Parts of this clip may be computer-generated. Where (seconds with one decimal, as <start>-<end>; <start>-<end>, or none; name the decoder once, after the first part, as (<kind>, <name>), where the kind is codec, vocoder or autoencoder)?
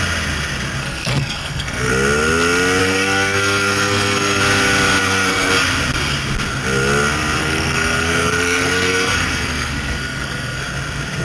0.8-1.9 (codec, SNAC); 2.8-4.4; 5.0-5.5; 7.4-10.6